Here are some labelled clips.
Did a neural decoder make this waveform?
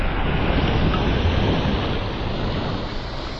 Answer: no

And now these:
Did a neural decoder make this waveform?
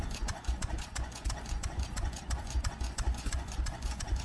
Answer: yes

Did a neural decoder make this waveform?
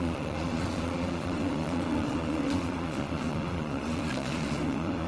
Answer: yes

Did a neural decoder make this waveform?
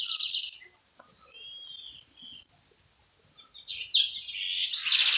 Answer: no